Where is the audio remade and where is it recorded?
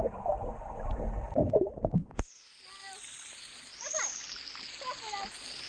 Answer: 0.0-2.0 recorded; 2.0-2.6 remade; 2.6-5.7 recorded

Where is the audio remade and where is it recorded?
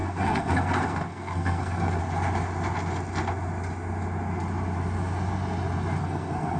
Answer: 0.0-2.0 remade; 2.0-6.0 recorded; 6.0-6.6 remade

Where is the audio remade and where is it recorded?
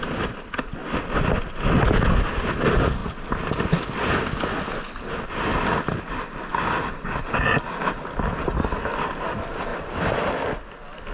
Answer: 0.0-11.1 recorded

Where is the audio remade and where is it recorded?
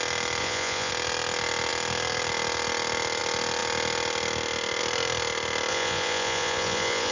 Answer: 0.0-0.4 recorded; 0.4-0.9 remade; 0.9-5.7 recorded; 5.7-7.1 remade